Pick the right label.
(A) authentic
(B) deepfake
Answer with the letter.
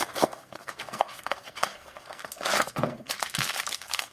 B